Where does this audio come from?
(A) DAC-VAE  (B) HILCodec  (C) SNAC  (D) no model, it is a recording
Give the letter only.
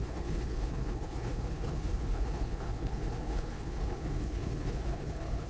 B